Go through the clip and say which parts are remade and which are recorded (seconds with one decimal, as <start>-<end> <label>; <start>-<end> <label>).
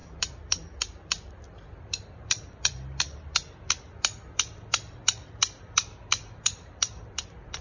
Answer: 0.0-7.6 remade